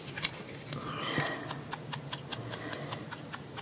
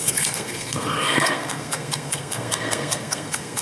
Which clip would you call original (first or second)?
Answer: first